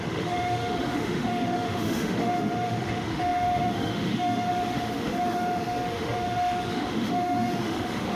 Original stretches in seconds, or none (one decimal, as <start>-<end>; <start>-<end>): none